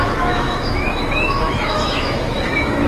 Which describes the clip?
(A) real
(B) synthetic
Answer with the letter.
B